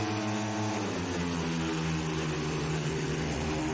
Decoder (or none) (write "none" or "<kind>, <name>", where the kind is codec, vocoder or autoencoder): none